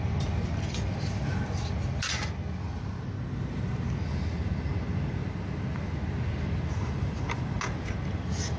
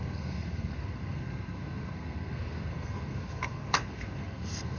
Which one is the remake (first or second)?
second